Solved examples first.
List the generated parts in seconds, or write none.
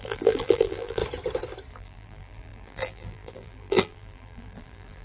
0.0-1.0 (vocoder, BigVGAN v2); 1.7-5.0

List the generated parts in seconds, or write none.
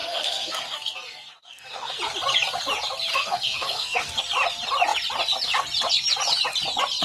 0.0-2.0 (codec, SNAC); 3.1-4.2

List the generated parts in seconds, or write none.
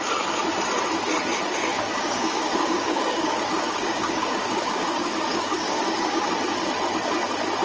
1.7-6.3 (codec, DAC)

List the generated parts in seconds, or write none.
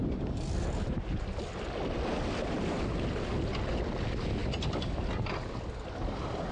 none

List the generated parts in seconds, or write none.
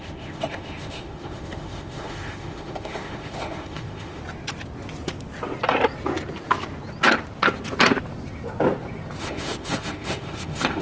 0.0-4.2 (autoencoder, DAC-VAE); 9.2-10.8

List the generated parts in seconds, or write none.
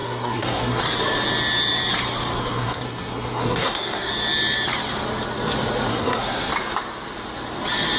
0.0-0.8 (codec, SNAC); 2.4-4.1; 5.9-6.5